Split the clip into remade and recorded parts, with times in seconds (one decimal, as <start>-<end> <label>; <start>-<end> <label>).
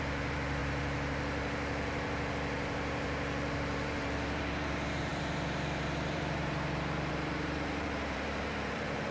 0.0-9.1 remade